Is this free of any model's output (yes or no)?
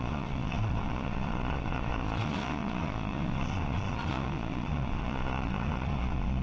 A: no